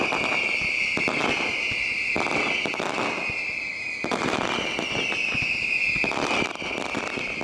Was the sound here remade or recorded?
recorded